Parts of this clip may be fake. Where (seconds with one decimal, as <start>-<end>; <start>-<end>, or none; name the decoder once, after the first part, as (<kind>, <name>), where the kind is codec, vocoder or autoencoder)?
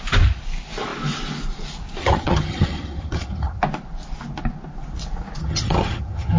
2.0-3.6 (vocoder, HiFi-GAN); 5.4-6.4